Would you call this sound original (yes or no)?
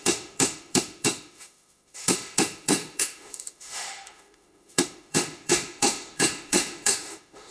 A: no